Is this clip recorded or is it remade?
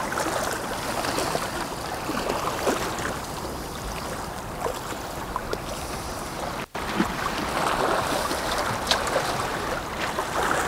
recorded